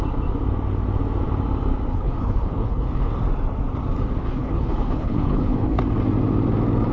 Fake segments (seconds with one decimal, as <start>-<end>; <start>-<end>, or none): 1.9-3.1; 4.2-5.8